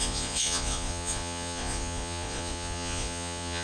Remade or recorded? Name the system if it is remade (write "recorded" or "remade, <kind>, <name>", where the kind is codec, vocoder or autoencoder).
remade, vocoder, Vocos